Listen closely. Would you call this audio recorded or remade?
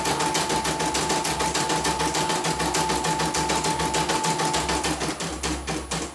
recorded